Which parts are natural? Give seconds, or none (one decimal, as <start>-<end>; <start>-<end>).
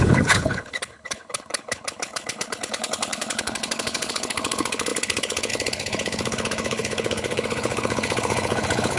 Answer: none